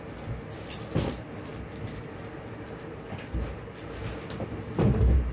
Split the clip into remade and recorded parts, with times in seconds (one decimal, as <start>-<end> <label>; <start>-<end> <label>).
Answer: 0.0-5.3 recorded